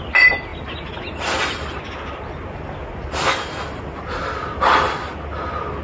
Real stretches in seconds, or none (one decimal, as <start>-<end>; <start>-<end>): 0.0-5.8